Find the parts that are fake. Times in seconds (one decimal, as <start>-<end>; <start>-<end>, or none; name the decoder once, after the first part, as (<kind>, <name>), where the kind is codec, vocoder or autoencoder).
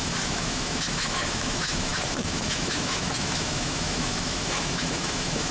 0.0-5.5 (autoencoder, DAC-VAE)